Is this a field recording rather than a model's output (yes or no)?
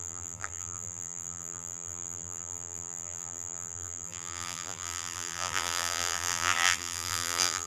no